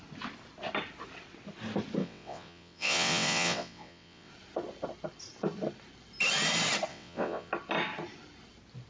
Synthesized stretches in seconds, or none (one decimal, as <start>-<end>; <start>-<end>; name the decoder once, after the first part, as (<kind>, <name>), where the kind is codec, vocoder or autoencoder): 2.0-4.3 (vocoder, WaveNeXt); 6.9-7.5